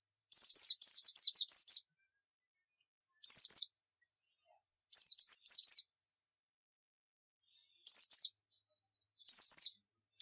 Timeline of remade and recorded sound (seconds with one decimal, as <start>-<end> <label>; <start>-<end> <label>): 0.0-2.6 remade; 2.6-3.6 recorded; 3.6-7.2 remade; 7.2-9.2 recorded; 9.2-10.2 remade